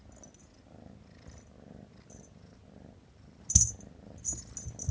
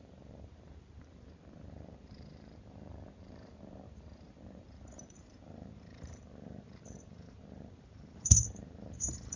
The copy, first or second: second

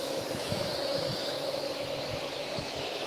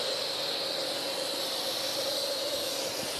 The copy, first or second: first